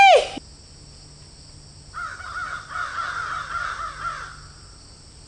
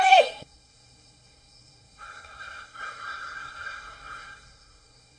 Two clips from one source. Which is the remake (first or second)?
second